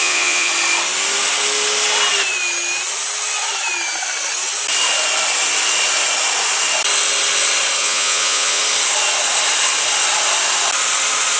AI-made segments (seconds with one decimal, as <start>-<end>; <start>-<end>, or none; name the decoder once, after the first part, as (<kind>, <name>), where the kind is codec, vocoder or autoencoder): 0.0-0.5 (vocoder, Vocos); 7.8-8.6